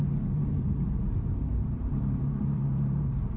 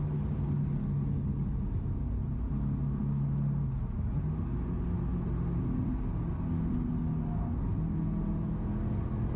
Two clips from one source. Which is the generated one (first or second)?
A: first